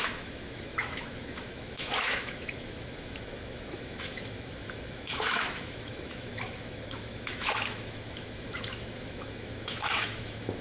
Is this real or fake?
fake